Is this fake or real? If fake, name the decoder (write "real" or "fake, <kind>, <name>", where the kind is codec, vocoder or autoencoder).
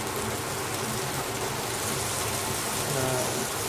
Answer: real